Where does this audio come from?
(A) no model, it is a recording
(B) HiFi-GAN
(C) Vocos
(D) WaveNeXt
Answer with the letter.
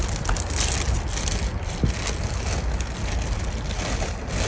A